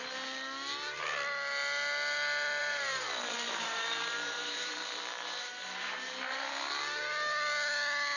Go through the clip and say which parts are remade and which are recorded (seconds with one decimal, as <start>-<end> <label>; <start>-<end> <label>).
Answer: 0.0-2.6 recorded; 2.6-6.7 remade; 6.7-8.2 recorded